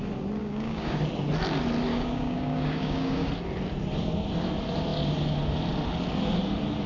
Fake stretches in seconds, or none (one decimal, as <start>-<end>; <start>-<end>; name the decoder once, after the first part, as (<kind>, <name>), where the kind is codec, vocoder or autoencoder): 0.4-1.0 (codec, DAC); 1.9-3.3